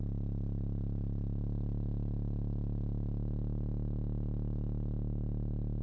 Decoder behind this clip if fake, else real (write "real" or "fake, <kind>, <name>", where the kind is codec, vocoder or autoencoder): real